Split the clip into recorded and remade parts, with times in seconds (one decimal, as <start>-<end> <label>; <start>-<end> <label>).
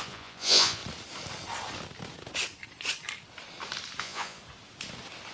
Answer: 0.0-0.8 remade; 0.8-4.0 recorded; 4.0-4.4 remade; 4.4-5.3 recorded